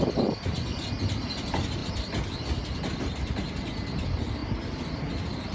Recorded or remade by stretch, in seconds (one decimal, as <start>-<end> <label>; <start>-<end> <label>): 0.0-5.5 recorded